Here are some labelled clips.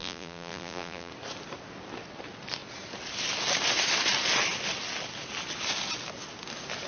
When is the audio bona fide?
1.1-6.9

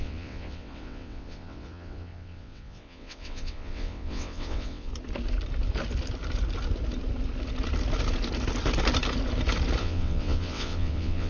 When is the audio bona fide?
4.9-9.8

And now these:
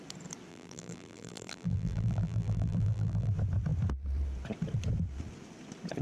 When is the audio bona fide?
0.0-0.5; 3.3-6.0

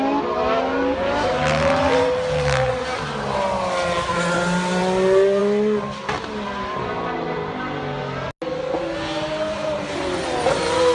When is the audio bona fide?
0.0-10.9